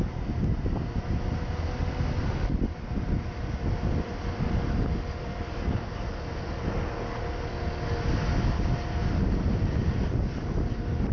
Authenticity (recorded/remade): recorded